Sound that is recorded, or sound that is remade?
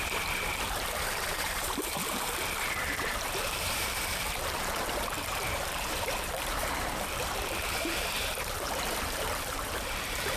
remade